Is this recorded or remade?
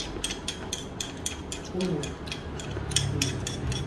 recorded